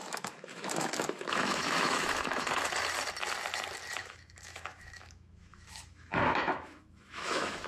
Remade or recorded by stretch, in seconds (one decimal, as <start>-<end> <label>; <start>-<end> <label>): 0.0-2.5 remade; 2.5-4.0 recorded; 4.0-7.7 remade